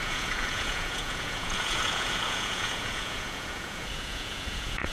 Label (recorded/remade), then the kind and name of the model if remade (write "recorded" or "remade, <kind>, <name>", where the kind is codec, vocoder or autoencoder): remade, vocoder, Vocos